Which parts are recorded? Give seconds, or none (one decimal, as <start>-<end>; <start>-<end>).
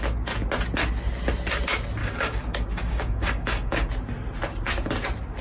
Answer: 0.0-2.0; 3.9-5.4